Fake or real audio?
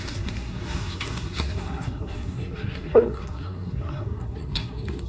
fake